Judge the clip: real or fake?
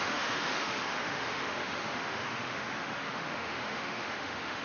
fake